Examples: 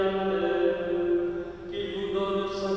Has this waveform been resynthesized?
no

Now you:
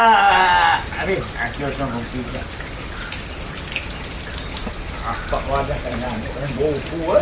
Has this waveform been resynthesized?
no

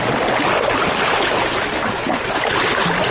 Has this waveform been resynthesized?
yes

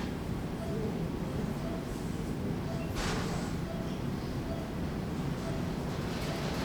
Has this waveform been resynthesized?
no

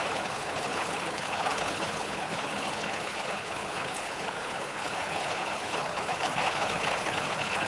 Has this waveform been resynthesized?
yes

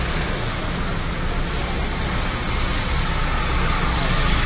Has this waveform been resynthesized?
no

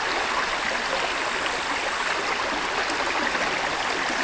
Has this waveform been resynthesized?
no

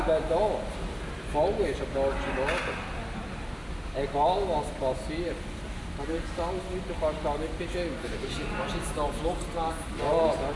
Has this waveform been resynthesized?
no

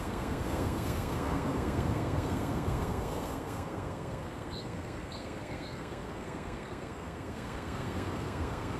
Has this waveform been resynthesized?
yes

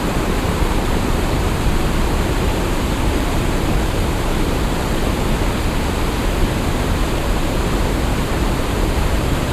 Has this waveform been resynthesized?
yes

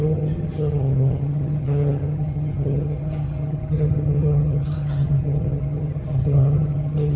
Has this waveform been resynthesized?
yes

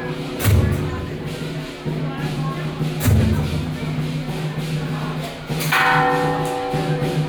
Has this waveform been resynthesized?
no